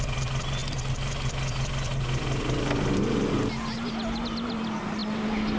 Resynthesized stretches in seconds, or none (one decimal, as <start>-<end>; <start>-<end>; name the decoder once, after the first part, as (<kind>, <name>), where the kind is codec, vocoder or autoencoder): none